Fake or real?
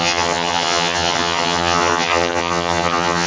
fake